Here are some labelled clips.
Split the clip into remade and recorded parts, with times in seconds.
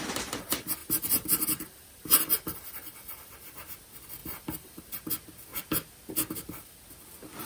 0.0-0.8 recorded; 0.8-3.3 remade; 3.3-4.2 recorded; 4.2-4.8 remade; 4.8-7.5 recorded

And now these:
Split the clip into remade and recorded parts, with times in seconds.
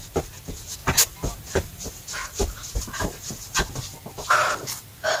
0.0-0.8 recorded; 0.8-3.6 remade; 3.6-5.2 recorded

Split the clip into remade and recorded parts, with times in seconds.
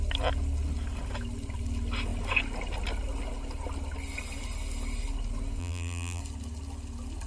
0.0-5.6 recorded; 5.6-6.2 remade; 6.2-7.3 recorded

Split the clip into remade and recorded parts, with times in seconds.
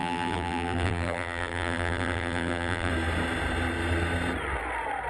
0.0-2.9 remade; 2.9-5.1 recorded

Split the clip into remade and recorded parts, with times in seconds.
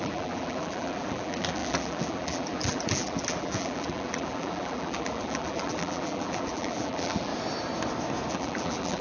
0.0-7.3 remade; 7.3-8.3 recorded; 8.3-9.0 remade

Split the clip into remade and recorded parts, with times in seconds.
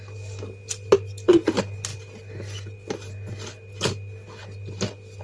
0.0-5.2 recorded